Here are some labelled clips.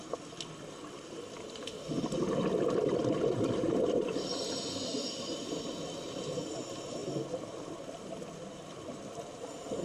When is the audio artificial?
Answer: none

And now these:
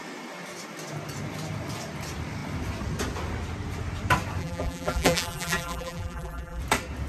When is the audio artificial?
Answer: 4.4-6.6

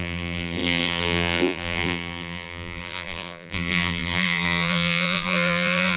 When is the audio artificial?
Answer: 0.0-6.0